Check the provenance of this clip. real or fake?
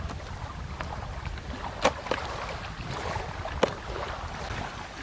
real